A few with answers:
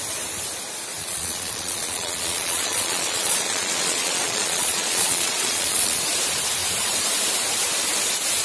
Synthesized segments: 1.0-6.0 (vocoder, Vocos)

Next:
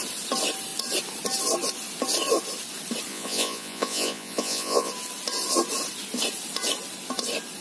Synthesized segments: 3.1-4.9 (vocoder, Vocos)

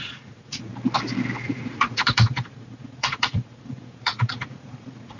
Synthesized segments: 0.0-0.7 (vocoder, Vocos); 1.4-5.2

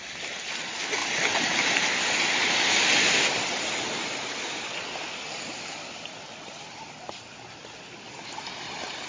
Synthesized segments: none

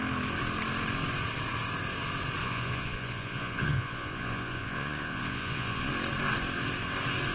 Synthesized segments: 2.4-5.9 (vocoder, Vocos)

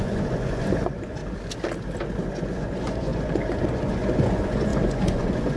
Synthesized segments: 0.0-1.2 (vocoder, Vocos); 2.3-5.6

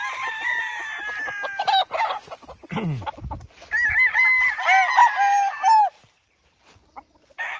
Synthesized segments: none

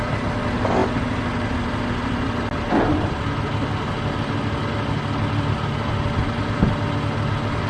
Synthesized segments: none